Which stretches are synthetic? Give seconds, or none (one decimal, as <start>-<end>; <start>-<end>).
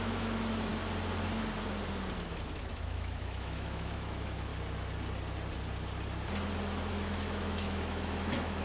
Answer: 0.0-0.7; 2.2-4.5; 6.9-8.6